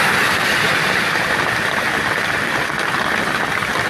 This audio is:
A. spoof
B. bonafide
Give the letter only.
B